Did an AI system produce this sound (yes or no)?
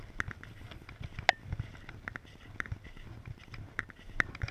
no